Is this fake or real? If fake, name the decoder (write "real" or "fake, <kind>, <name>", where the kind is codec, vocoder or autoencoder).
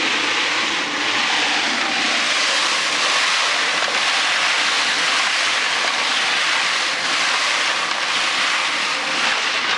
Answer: real